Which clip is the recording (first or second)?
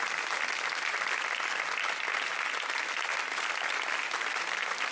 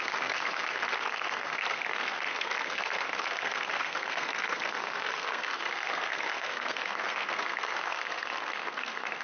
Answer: first